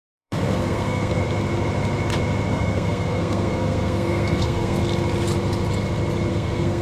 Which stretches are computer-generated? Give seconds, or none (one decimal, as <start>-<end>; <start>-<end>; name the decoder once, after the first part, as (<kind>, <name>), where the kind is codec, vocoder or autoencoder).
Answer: 0.0-1.2 (codec, SNAC); 2.5-4.8; 6.3-6.8